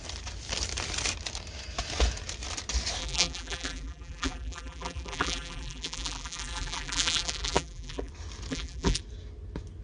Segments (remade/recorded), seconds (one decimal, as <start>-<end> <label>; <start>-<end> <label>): 0.0-3.0 recorded; 3.0-8.1 remade; 8.1-8.5 recorded; 8.5-9.0 remade; 9.0-9.8 recorded

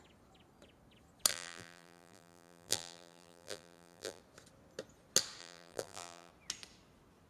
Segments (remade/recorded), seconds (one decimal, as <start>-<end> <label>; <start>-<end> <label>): 0.0-1.3 recorded; 1.3-4.2 remade; 4.2-5.4 recorded; 5.4-6.3 remade; 6.3-7.3 recorded